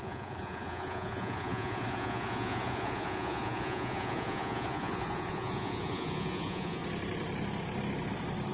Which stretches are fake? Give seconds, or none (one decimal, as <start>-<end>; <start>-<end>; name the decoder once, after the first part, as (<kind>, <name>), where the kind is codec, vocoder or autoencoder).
0.0-6.8 (vocoder, Vocos)